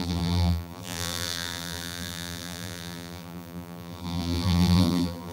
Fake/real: fake